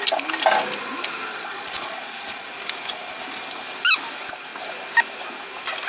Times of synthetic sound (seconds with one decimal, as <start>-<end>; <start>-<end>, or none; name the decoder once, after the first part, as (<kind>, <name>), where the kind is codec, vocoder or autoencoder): 1.3-2.5 (vocoder, Vocos)